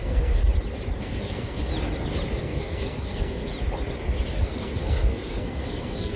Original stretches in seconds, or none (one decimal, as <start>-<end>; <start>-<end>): 0.4-1.0; 1.7-2.4; 3.5-4.3